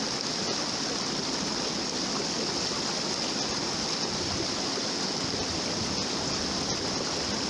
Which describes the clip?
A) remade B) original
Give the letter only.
B